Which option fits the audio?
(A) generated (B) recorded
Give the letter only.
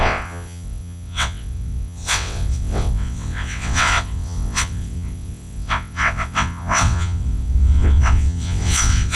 A